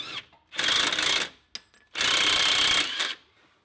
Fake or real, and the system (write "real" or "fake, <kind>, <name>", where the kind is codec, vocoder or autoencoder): real